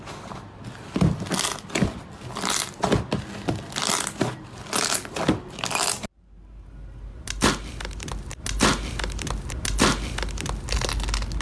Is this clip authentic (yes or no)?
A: yes